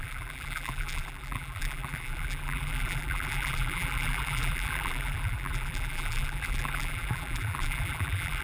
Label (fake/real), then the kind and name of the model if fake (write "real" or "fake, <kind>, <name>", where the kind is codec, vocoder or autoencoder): fake, vocoder, BigVGAN v2